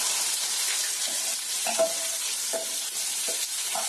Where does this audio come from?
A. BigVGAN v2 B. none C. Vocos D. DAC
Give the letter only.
B